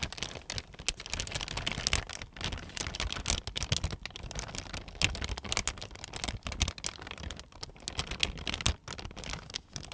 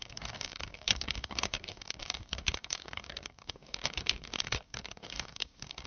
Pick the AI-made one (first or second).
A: second